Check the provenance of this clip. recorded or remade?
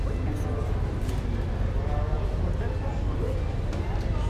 recorded